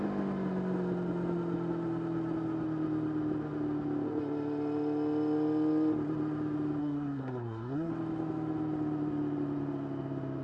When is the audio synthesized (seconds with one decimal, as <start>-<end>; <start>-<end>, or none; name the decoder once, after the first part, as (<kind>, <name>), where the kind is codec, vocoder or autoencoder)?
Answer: 6.8-7.9 (codec, SNAC)